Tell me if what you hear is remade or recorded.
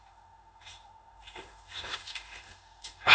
remade